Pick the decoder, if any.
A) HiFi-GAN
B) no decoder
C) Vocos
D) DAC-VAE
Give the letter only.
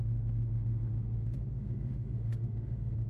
D